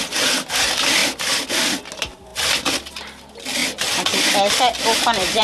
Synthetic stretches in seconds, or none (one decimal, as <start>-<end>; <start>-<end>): 2.3-2.9; 3.6-5.4